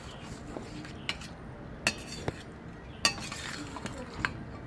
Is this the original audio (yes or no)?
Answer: yes